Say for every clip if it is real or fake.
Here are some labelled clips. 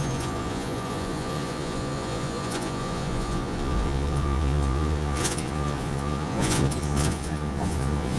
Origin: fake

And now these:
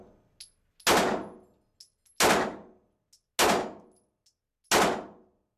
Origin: real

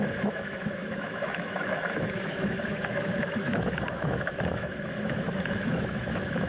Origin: fake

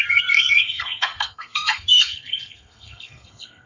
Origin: fake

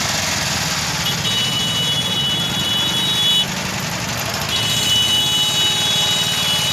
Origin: real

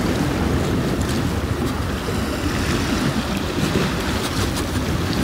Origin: real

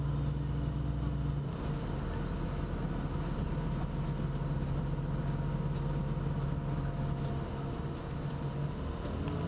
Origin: real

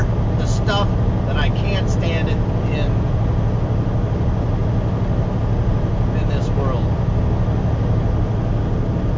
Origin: real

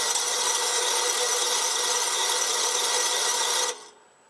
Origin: real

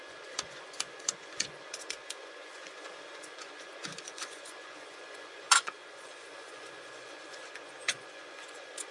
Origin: fake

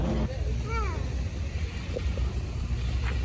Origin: real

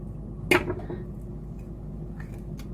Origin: real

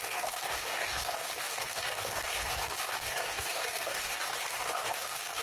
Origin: fake